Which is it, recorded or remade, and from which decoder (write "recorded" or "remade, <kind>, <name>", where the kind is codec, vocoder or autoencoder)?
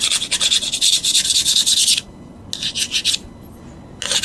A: recorded